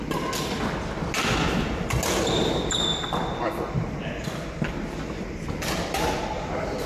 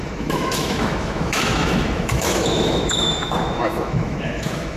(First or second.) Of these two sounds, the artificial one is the second